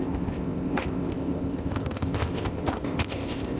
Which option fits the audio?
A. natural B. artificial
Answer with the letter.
B